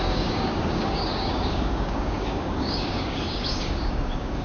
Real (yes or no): no